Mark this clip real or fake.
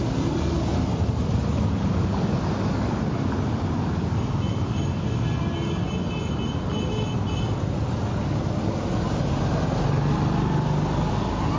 real